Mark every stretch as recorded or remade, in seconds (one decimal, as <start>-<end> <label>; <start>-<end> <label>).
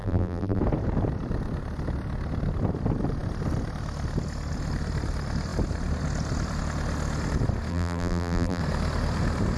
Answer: 0.0-0.6 remade; 0.6-7.7 recorded; 7.7-8.6 remade; 8.6-9.6 recorded